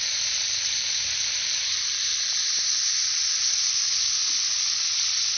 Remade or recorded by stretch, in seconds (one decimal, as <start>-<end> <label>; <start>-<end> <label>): 0.0-5.4 recorded